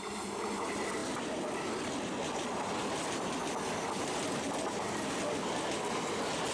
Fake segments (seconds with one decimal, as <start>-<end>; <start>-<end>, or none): none